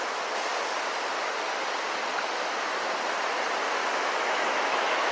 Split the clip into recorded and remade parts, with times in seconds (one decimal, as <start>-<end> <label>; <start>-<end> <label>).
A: 0.0-3.8 recorded; 3.8-5.1 remade